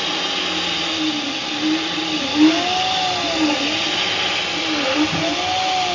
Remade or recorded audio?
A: recorded